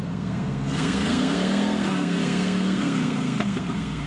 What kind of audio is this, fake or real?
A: fake